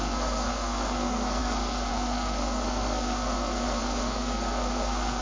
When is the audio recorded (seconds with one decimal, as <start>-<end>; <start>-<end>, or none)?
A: none